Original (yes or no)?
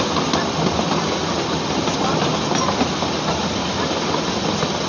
yes